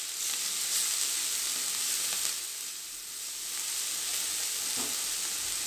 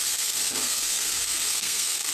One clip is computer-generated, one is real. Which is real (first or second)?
first